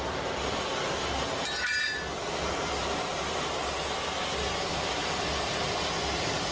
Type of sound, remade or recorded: recorded